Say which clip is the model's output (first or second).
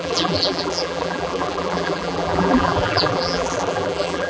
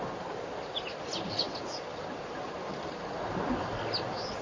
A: first